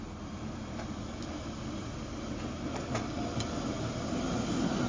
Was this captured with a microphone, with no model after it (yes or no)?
yes